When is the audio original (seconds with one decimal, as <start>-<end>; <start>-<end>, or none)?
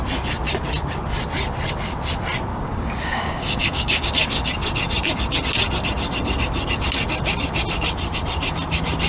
0.0-2.5; 4.1-9.1